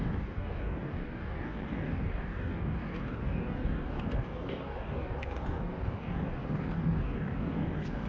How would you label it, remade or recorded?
remade